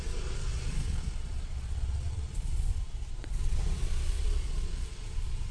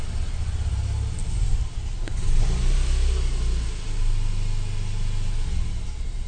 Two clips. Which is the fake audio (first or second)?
first